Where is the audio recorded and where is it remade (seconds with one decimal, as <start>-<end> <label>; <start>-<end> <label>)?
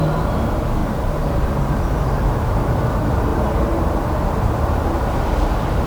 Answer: 0.0-5.9 remade